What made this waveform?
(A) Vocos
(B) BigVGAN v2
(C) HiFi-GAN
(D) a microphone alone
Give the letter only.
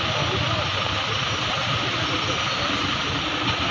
D